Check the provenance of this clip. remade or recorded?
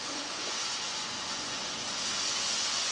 remade